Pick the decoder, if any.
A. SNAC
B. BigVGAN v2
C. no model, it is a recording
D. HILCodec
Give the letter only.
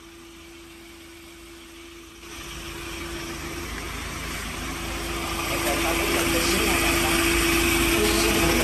C